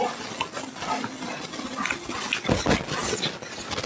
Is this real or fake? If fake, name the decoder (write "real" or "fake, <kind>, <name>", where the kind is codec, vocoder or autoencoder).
real